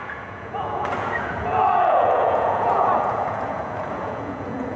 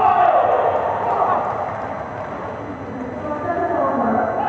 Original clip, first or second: second